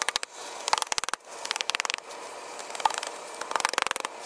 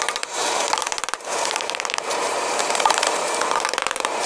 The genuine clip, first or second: first